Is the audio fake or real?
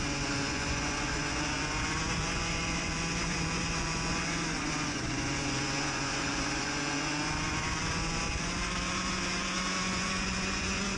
fake